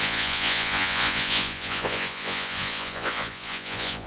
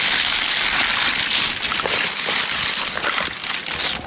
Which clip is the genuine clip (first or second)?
second